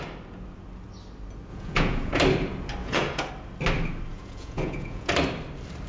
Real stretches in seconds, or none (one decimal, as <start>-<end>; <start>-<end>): 0.0-1.5; 2.2-2.8; 3.3-4.1; 5.1-5.9